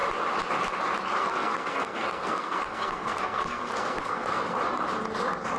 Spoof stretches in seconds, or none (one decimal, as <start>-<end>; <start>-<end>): 1.2-4.6